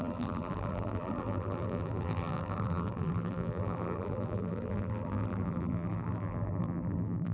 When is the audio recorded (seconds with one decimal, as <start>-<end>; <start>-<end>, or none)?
none